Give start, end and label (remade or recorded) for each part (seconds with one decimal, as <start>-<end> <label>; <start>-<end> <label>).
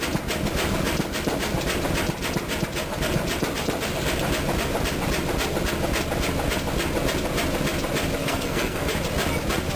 0.0-8.2 recorded; 8.2-8.9 remade; 8.9-9.8 recorded